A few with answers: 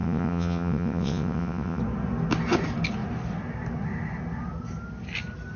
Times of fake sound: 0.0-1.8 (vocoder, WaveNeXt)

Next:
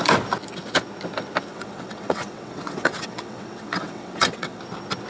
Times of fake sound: 1.5-4.6 (vocoder, WaveNeXt)

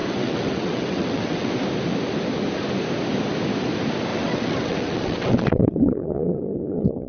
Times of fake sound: 0.0-1.5 (vocoder, WaveNeXt); 4.1-7.1